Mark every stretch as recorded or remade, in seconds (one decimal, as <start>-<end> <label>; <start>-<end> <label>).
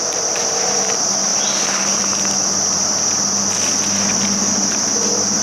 0.0-1.3 remade; 1.3-4.5 recorded; 4.5-5.4 remade